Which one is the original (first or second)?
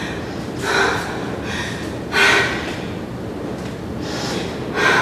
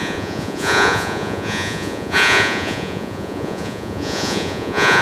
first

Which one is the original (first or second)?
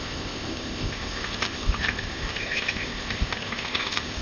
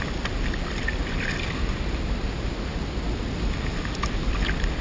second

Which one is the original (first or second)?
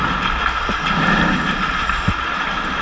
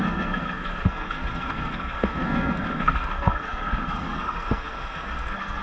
first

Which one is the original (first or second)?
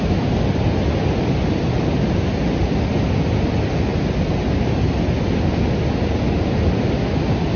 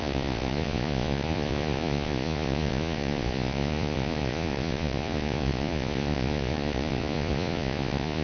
first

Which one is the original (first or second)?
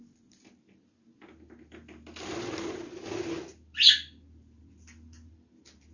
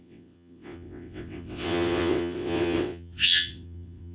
first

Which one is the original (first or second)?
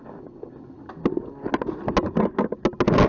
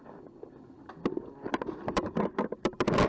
first